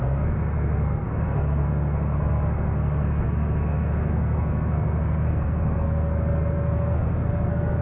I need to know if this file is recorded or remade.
remade